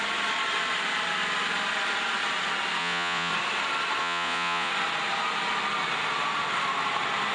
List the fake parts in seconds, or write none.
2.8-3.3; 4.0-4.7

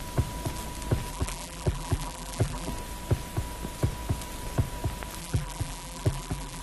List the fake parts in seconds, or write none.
1.1-2.7; 5.2-6.6